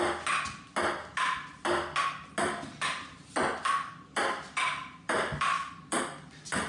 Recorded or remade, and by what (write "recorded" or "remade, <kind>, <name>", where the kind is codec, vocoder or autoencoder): recorded